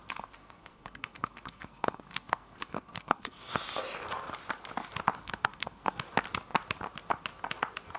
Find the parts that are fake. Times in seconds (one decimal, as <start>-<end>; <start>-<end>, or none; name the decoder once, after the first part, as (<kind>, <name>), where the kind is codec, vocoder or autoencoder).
0.0-3.5 (codec, SNAC); 5.2-6.0